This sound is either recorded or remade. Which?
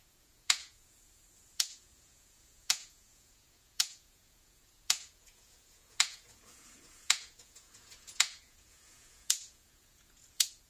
remade